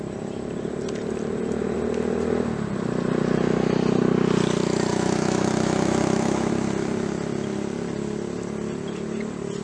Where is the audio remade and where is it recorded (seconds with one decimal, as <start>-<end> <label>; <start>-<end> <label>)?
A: 0.0-4.9 recorded; 4.9-6.5 remade; 6.5-9.6 recorded